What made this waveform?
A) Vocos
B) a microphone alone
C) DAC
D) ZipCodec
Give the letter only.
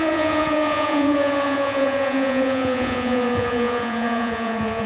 A